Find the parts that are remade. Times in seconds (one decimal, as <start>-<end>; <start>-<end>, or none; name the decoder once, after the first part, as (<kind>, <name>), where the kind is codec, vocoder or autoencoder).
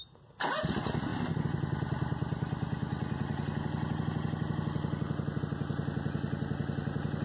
none